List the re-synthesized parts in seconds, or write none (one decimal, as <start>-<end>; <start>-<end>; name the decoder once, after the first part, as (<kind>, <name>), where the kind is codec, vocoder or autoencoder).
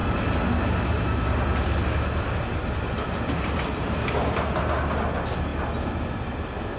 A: none